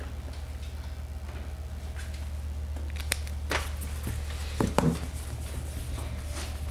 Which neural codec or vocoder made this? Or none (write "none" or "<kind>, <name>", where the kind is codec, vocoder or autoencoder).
none